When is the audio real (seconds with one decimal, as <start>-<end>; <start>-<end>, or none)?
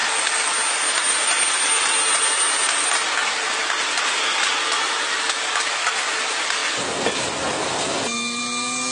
0.0-8.9